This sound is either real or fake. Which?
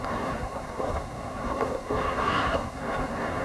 fake